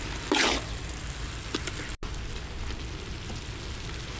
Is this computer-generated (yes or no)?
no